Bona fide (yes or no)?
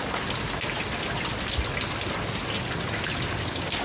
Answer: yes